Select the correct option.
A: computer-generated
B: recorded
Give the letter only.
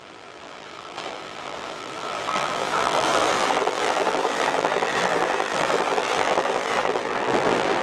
A